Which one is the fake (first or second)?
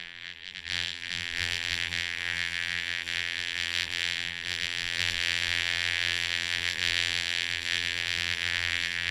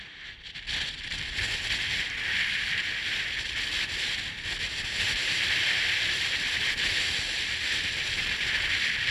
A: first